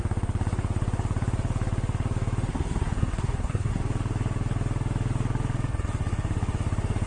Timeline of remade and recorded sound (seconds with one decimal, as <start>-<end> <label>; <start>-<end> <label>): 0.0-2.5 recorded; 2.5-3.8 remade; 3.8-7.1 recorded